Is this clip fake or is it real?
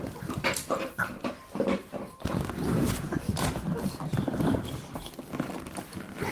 fake